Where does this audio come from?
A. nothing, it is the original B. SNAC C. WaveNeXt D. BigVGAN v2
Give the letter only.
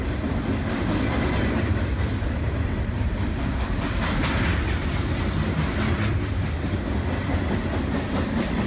A